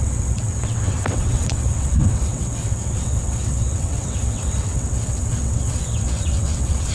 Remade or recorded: remade